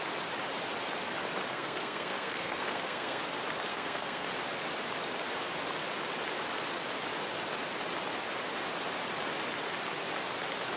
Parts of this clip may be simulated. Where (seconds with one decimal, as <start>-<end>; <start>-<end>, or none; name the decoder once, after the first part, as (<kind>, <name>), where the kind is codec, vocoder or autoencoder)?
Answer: 1.5-3.2 (codec, SNAC); 3.7-4.3